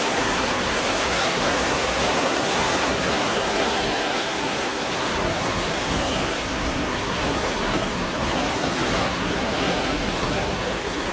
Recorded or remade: remade